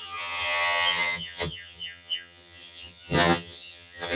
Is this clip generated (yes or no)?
yes